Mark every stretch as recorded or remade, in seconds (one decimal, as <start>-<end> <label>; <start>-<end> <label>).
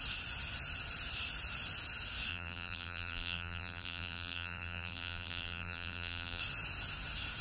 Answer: 0.0-2.3 recorded; 2.3-6.4 remade; 6.4-7.4 recorded